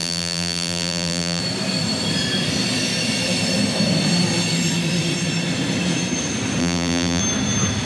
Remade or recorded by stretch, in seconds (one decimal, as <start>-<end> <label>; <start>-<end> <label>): 0.0-1.4 remade; 1.4-6.6 recorded; 6.6-7.2 remade; 7.2-7.8 recorded